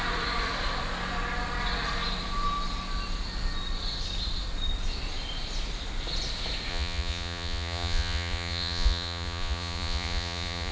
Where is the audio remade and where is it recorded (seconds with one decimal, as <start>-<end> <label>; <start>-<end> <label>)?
0.0-6.7 recorded; 6.7-10.7 remade